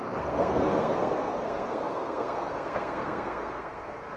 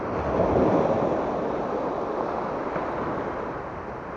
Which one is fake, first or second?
first